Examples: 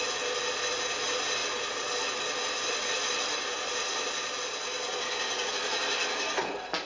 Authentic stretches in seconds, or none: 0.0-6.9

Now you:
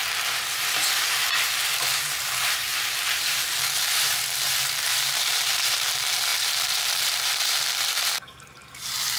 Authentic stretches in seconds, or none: 0.0-0.6